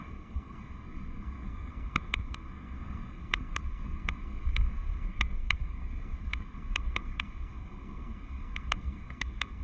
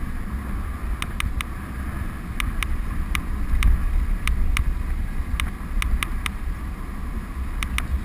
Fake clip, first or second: first